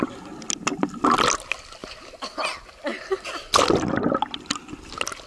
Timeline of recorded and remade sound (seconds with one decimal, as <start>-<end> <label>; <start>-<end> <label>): 0.0-5.3 recorded